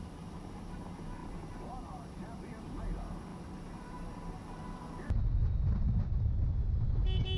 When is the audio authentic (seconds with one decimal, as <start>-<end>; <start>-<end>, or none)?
0.0-1.2; 2.6-3.3; 4.5-7.4

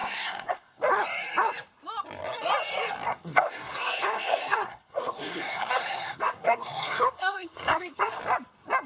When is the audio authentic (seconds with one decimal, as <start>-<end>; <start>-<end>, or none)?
0.8-3.1; 8.2-8.9

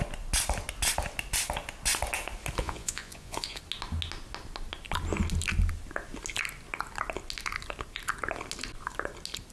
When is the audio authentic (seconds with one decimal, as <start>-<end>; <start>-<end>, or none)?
0.0-2.6; 3.6-9.5

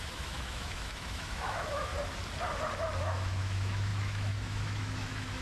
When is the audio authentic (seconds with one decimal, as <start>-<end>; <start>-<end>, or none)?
1.9-3.0

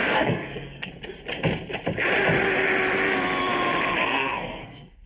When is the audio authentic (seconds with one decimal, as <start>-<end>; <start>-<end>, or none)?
0.9-4.0

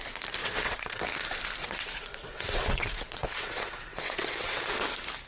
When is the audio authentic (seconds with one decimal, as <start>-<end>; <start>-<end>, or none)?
0.0-0.4; 1.0-1.6; 4.8-5.3